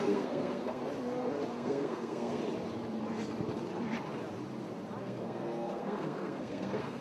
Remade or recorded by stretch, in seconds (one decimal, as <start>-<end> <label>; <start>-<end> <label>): 0.0-0.8 remade; 0.8-1.5 recorded; 1.5-2.4 remade; 2.4-5.0 recorded; 5.0-7.0 remade

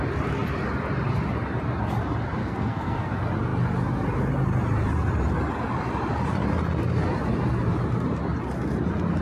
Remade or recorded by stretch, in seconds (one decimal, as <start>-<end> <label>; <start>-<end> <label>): 0.0-2.4 recorded; 2.4-3.1 remade; 3.1-9.2 recorded

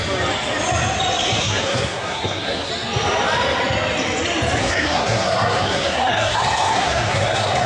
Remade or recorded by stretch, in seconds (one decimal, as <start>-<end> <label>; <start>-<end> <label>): 0.0-1.4 recorded; 1.4-2.7 remade; 2.7-4.6 recorded; 4.6-7.7 remade